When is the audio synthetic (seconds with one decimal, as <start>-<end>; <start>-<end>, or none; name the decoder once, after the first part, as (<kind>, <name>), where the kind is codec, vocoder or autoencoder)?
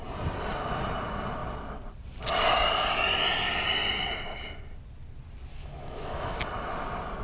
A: 5.5-6.4 (autoencoder, DAC-VAE)